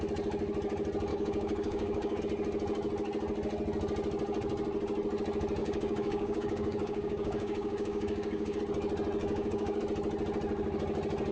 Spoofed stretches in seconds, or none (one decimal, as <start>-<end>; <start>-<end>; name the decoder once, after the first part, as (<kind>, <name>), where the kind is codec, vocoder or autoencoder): 1.1-2.2 (codec, DAC); 5.6-8.6; 9.2-9.8